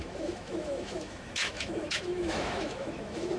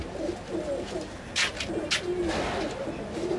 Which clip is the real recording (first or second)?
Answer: second